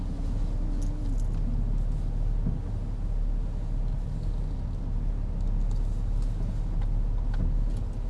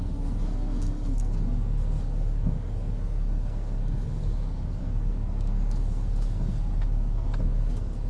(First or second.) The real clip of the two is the first